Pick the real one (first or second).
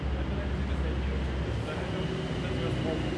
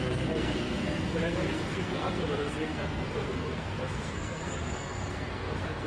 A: first